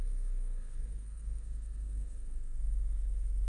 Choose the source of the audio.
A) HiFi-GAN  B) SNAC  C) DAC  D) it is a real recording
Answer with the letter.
B